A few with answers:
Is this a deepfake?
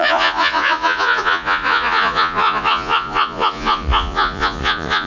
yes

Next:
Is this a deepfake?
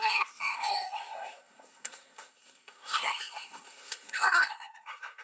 yes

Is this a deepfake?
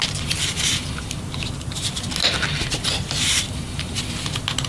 no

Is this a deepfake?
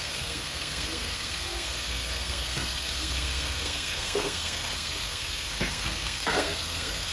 yes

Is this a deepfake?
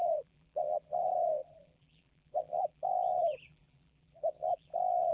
yes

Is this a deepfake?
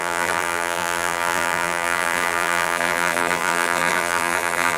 yes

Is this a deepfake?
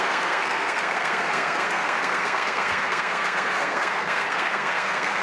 yes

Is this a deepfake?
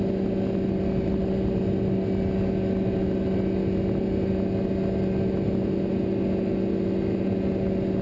no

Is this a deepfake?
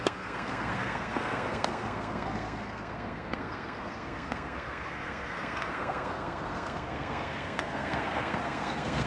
yes